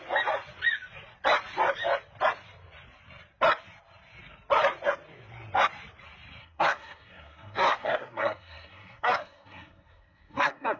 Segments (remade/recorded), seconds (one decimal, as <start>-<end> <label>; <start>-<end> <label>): 0.0-6.4 recorded; 6.4-10.8 remade